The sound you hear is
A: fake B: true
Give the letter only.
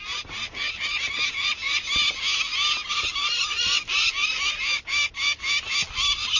B